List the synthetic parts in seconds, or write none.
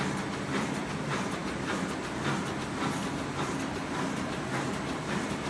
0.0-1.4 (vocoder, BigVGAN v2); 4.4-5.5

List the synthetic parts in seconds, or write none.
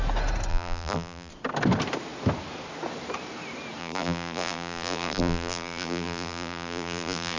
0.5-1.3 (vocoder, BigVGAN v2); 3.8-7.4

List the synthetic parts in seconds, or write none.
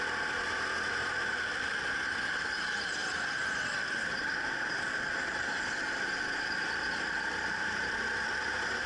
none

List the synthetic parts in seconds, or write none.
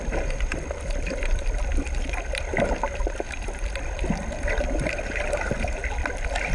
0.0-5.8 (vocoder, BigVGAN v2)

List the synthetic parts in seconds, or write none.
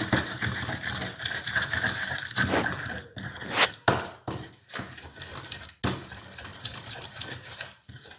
6.5-8.2 (vocoder, BigVGAN v2)